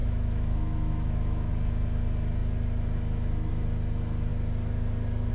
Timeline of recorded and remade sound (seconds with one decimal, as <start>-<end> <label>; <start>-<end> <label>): 0.0-1.5 remade; 1.5-5.3 recorded